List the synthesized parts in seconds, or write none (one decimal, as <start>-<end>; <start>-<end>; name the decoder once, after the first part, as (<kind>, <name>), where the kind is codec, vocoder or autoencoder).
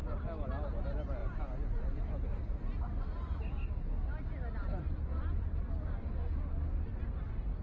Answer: 1.2-3.0 (vocoder, BigVGAN v2); 4.6-6.2